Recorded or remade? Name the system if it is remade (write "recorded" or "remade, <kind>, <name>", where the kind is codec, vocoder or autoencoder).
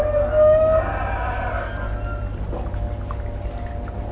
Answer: recorded